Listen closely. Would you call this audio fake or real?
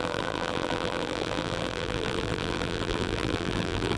fake